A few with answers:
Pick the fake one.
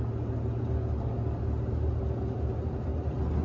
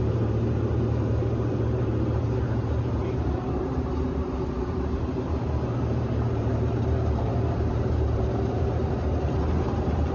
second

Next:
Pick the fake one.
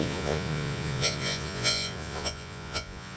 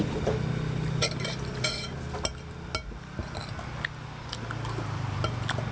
first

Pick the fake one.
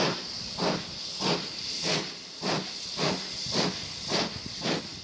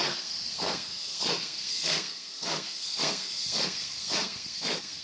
second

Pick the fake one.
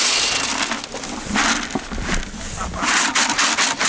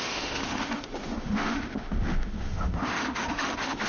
second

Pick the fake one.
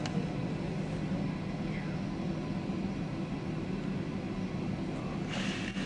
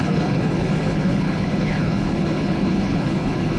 second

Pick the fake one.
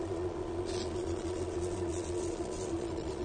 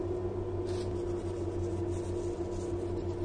first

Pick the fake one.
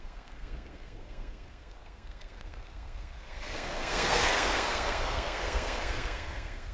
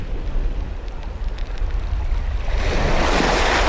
first